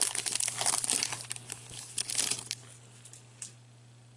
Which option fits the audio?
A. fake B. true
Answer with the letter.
B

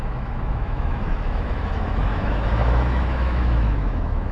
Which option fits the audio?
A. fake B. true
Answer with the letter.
A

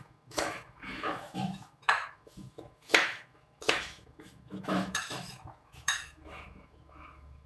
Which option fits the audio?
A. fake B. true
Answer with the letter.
A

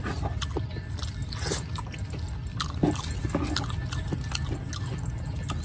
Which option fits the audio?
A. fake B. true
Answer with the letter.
B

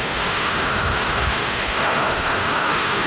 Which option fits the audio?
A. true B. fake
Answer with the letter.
B